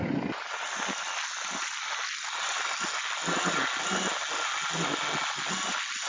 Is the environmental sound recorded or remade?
recorded